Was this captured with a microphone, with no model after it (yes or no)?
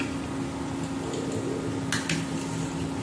yes